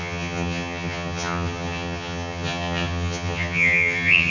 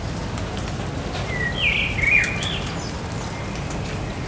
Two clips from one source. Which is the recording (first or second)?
second